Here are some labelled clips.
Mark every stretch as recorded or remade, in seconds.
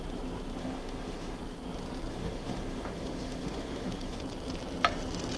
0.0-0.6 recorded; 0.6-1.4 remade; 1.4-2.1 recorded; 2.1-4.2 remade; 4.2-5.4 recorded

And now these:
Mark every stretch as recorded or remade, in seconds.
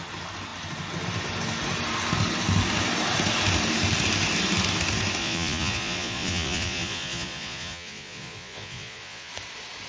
0.0-5.2 recorded; 5.2-9.3 remade; 9.3-9.9 recorded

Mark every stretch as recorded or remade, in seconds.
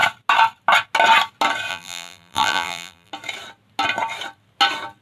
0.0-1.7 recorded; 1.7-3.1 remade; 3.1-5.0 recorded